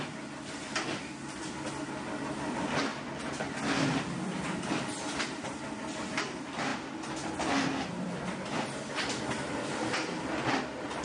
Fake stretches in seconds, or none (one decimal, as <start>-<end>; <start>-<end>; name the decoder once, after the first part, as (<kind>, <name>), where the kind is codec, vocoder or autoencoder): none